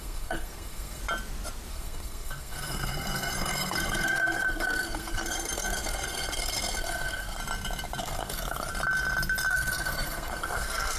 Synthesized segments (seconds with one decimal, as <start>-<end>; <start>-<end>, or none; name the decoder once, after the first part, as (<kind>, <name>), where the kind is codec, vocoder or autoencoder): 0.0-1.0 (codec, SNAC); 1.7-7.4; 8.0-8.7; 9.5-11.0